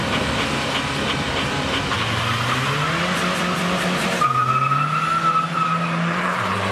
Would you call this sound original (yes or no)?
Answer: yes